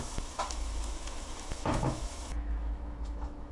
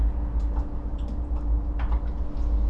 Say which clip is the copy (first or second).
first